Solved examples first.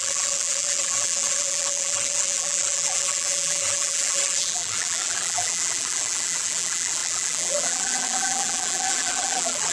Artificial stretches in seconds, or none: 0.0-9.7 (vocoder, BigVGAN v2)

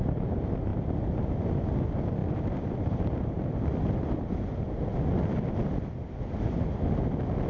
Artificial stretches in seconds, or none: none

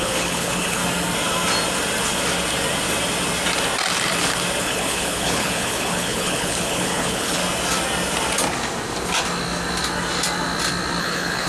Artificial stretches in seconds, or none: 0.0-0.8 (codec, HILCodec); 4.6-7.4; 11.0-11.5

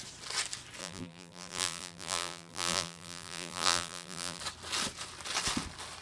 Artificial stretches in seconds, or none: 0.8-4.4 (vocoder, BigVGAN v2)

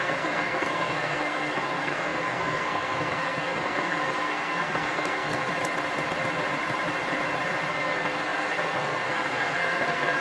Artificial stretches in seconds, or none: 0.0-5.5 (codec, SNAC); 7.7-10.2

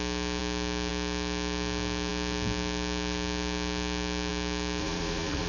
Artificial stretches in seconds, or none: 4.8-5.5 (vocoder, Vocos)

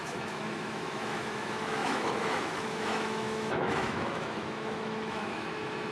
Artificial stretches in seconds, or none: 0.0-5.9 (autoencoder, DAC-VAE)